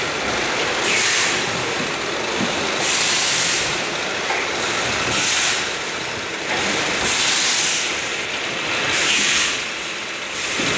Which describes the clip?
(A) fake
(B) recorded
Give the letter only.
B